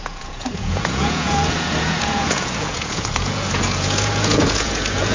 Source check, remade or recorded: remade